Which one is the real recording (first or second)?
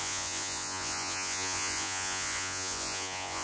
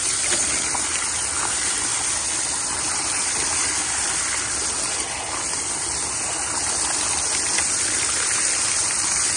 second